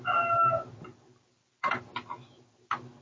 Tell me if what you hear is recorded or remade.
recorded